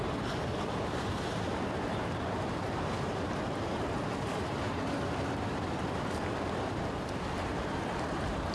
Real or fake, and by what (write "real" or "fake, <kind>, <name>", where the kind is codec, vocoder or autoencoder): fake, vocoder, BigVGAN v2